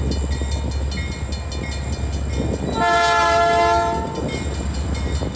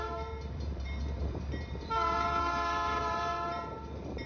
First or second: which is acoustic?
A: first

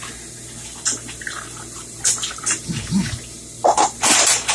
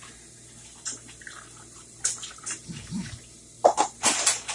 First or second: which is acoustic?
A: first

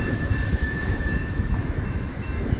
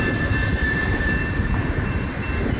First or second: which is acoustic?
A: second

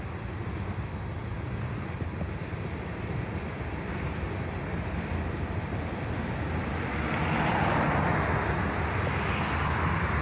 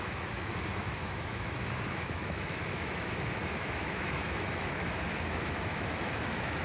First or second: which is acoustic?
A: first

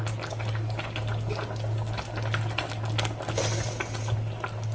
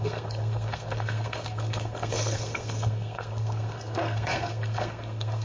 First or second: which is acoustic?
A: first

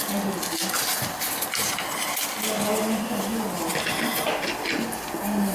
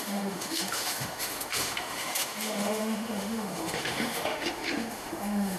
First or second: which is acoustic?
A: first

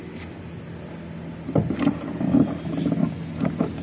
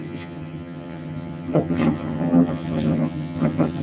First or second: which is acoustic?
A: first